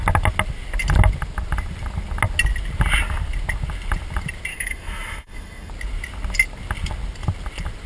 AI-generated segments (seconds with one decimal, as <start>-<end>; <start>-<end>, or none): 4.5-5.7